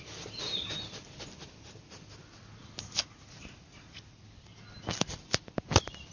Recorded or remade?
recorded